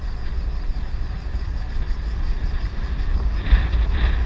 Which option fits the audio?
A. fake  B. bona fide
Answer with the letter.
B